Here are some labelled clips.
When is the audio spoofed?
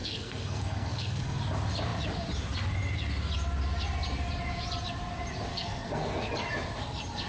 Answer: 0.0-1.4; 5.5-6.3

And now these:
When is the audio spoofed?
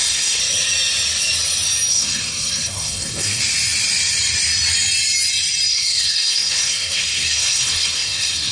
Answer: 0.0-0.4; 1.9-3.4; 5.7-8.5